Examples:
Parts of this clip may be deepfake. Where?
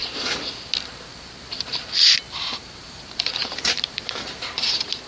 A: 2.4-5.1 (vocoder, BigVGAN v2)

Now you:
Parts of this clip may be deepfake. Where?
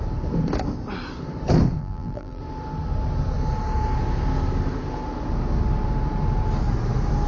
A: 1.8-2.4 (vocoder, BigVGAN v2)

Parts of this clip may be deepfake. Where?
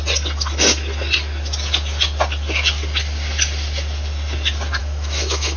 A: 4.8-5.6 (autoencoder, DAC-VAE)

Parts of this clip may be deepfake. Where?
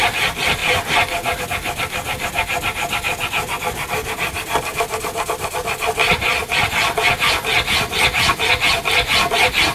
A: 0.6-1.4 (vocoder, BigVGAN v2)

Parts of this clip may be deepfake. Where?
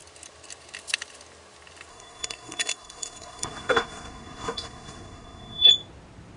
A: 1.9-5.7 (codec, SNAC)